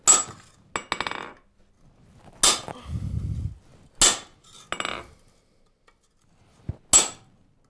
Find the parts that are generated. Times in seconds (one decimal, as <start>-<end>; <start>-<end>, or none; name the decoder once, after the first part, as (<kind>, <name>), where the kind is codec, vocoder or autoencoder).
none